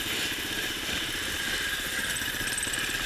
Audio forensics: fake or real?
fake